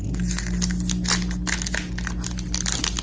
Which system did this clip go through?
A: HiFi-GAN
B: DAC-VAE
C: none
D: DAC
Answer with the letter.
C